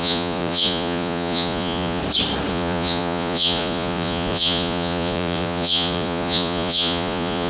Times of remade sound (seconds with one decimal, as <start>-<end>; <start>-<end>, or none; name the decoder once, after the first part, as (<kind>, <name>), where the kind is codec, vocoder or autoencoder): 0.0-2.0 (vocoder, Vocos); 2.5-7.5